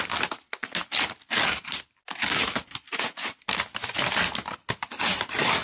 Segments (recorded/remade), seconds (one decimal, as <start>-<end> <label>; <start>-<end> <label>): 0.0-5.6 recorded